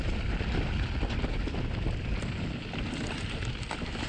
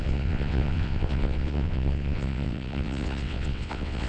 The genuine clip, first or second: first